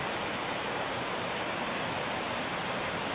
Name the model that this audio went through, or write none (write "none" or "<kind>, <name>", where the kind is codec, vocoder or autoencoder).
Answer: none